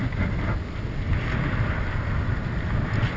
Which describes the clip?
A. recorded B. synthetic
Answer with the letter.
A